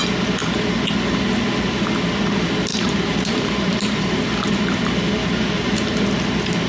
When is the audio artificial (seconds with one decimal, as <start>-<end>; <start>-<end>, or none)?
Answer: 2.7-4.6